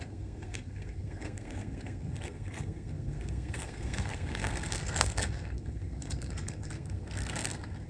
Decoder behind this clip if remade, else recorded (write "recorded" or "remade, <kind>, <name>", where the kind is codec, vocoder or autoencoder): remade, codec, SNAC